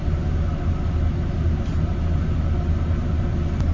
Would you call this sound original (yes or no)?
yes